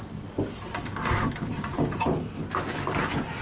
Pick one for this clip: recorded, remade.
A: recorded